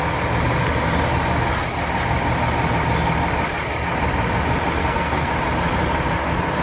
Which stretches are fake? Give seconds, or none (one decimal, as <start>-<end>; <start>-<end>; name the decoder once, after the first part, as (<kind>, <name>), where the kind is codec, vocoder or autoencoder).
4.8-5.3 (codec, SNAC)